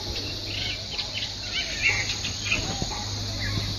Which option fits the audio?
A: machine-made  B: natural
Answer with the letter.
B